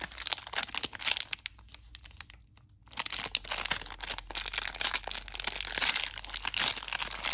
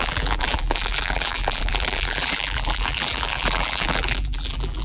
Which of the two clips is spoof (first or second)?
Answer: second